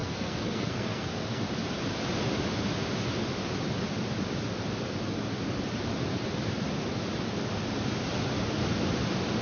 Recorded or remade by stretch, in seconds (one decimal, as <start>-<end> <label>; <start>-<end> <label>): 0.0-1.4 remade; 1.4-9.4 recorded